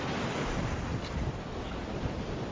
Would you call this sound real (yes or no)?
yes